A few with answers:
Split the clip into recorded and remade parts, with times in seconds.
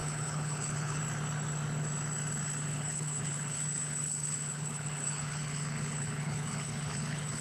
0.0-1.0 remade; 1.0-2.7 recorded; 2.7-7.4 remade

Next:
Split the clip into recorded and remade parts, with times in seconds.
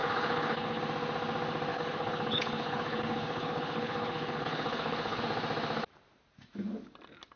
0.0-0.8 remade; 0.8-1.7 recorded; 1.7-5.2 remade; 5.2-7.4 recorded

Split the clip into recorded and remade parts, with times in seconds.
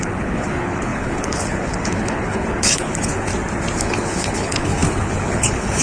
0.0-3.3 remade; 3.3-3.8 recorded; 3.8-5.8 remade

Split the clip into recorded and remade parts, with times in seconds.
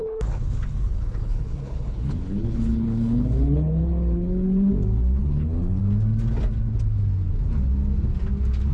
0.0-4.7 remade; 4.7-5.2 recorded; 5.2-5.8 remade; 5.8-8.7 recorded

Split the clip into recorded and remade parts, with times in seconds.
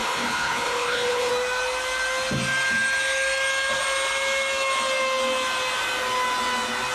0.0-1.3 remade; 1.3-6.9 recorded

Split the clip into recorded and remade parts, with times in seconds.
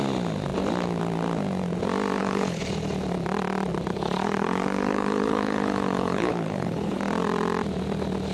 0.0-2.2 recorded; 2.2-2.7 remade; 2.7-3.9 recorded; 3.9-7.0 remade; 7.0-8.3 recorded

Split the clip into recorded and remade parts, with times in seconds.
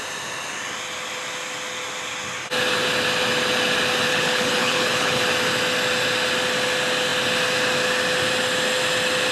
0.0-4.1 recorded; 4.1-5.2 remade; 5.2-9.3 recorded